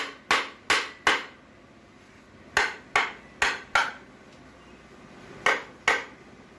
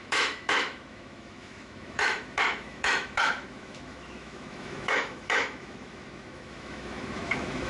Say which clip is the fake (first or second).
second